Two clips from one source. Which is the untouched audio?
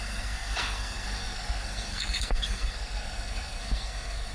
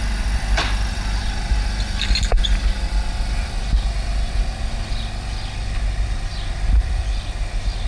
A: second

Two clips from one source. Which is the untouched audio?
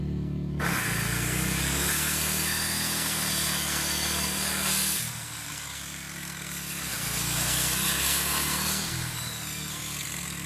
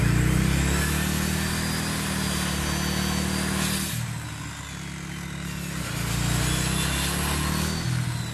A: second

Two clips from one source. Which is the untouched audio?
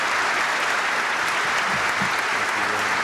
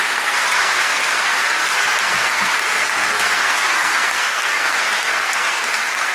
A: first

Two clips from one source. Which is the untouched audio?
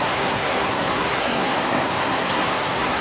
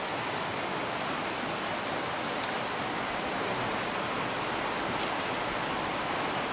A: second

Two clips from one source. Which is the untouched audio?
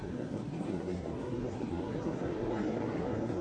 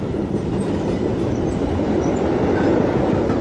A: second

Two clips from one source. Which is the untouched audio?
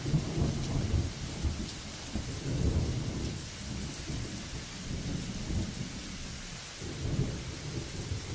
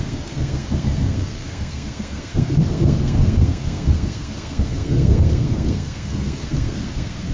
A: first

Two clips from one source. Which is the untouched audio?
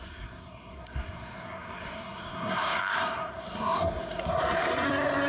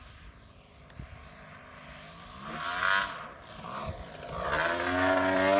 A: second